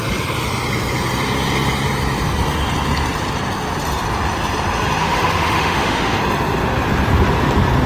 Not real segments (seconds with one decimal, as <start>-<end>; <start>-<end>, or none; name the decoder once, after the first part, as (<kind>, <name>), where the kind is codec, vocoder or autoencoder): 5.0-6.2 (autoencoder, DAC-VAE)

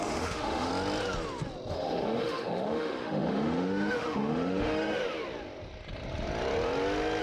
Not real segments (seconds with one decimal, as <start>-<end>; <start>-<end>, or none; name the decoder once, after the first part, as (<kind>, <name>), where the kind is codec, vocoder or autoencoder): 0.0-0.7 (autoencoder, DAC-VAE); 1.7-5.0

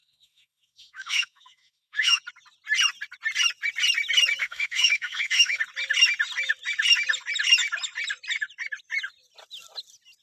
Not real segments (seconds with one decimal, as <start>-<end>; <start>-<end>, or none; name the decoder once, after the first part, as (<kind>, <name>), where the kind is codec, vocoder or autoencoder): 0.0-2.2 (autoencoder, DAC-VAE); 4.4-5.6

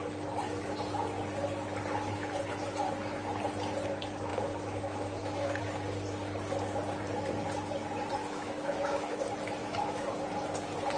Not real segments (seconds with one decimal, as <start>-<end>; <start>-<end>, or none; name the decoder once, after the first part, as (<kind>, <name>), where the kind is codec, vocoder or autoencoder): 4.3-5.6 (autoencoder, DAC-VAE); 8.2-9.2; 9.6-10.1

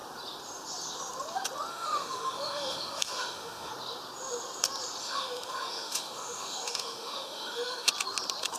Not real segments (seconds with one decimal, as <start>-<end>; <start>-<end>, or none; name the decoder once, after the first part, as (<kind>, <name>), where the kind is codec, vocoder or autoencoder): 1.7-3.7 (autoencoder, DAC-VAE); 5.0-7.9

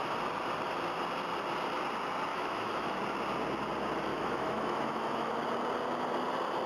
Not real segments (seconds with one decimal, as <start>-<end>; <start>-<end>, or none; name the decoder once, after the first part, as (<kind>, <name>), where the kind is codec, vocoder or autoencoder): 2.3-3.0 (autoencoder, DAC-VAE); 4.1-5.3

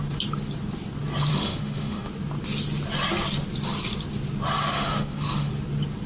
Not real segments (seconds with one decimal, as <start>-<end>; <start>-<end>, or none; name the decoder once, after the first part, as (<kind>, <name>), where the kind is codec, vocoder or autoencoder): 1.3-2.1 (autoencoder, DAC-VAE); 4.7-5.5